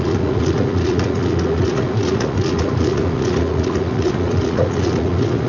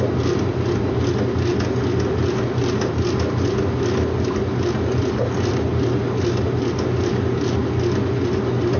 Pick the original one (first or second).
second